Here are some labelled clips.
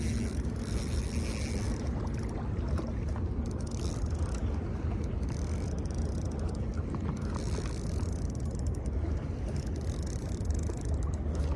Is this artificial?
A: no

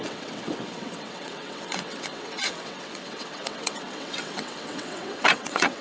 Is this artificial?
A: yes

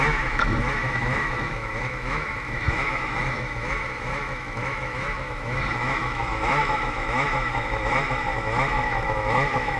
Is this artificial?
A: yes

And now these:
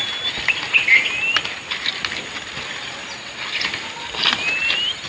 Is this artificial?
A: no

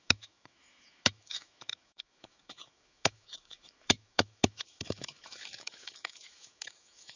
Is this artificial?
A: yes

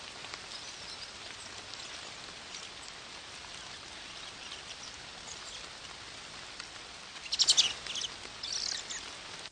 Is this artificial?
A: no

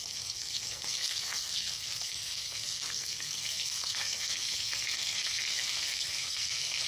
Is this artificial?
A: yes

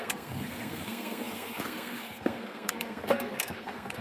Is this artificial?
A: yes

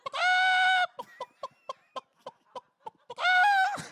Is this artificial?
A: no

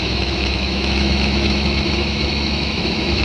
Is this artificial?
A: yes